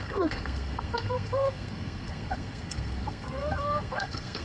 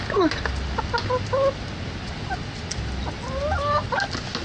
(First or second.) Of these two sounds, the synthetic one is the first